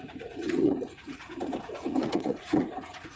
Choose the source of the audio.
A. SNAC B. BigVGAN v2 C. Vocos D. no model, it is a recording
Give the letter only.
C